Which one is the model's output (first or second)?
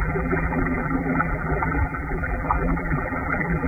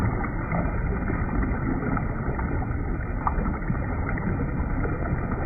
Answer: first